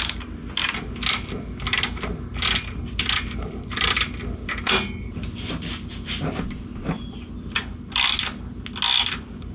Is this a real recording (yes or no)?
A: yes